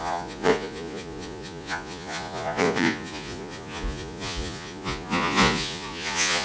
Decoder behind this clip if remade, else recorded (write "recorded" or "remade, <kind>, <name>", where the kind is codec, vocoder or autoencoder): remade, vocoder, Vocos